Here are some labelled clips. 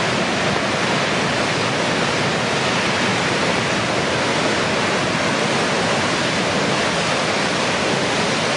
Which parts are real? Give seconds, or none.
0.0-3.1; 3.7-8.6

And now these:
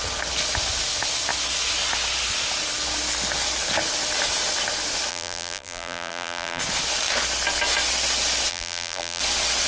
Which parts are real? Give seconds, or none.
0.0-5.1; 6.6-8.5; 9.2-9.7